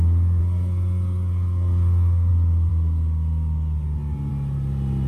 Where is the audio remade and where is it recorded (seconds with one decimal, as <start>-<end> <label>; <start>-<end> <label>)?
0.0-0.4 recorded; 0.4-2.3 remade; 2.3-5.1 recorded